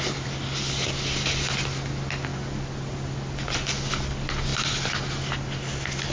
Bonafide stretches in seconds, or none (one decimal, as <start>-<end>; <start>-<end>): 0.0-6.1